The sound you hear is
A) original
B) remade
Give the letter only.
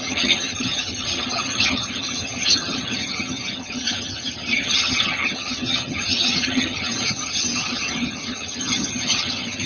B